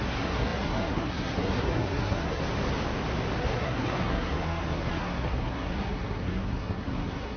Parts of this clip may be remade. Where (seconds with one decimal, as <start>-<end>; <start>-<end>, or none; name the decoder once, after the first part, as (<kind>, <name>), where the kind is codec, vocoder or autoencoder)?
0.0-2.4 (codec, SNAC); 3.4-7.4